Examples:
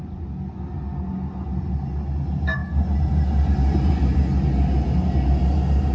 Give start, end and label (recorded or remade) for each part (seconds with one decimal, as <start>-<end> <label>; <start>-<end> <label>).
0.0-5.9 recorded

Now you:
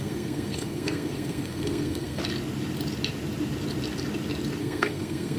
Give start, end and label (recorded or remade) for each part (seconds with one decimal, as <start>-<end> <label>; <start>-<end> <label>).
0.0-2.2 remade; 2.2-4.6 recorded; 4.6-5.4 remade

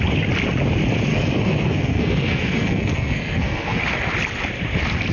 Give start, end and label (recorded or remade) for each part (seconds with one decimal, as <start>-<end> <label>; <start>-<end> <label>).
0.0-1.1 recorded; 1.1-3.8 remade; 3.8-5.1 recorded

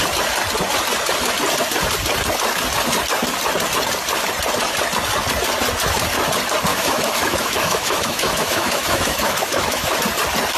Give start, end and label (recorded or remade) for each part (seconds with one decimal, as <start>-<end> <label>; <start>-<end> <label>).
0.0-6.7 recorded; 6.7-10.0 remade; 10.0-10.6 recorded

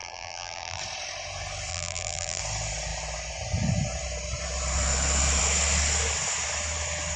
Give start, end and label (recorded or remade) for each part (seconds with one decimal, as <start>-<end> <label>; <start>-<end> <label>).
0.0-0.8 remade; 0.8-1.7 recorded; 1.7-2.4 remade; 2.4-7.2 recorded